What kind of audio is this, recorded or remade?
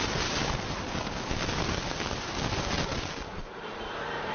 recorded